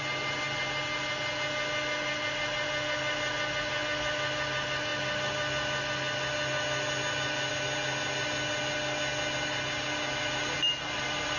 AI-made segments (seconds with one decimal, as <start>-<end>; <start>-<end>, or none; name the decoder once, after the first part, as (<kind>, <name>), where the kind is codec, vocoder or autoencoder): none